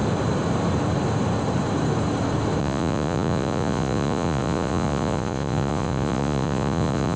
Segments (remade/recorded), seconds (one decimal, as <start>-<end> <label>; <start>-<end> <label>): 0.0-2.6 recorded; 2.6-7.2 remade